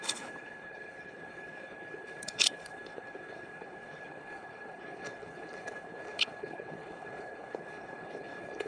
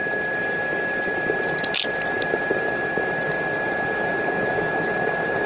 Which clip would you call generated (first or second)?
first